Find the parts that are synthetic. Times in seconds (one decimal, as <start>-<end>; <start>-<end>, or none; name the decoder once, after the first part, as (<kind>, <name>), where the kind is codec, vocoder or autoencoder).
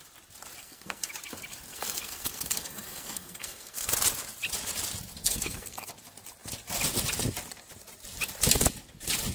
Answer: 0.6-1.1 (codec, SNAC); 1.7-3.9; 5.2-5.9